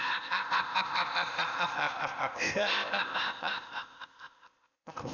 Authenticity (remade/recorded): remade